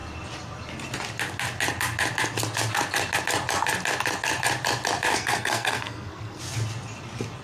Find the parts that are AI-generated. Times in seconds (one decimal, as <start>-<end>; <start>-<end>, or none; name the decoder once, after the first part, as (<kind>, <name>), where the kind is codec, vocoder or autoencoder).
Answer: 5.1-6.4 (codec, SNAC)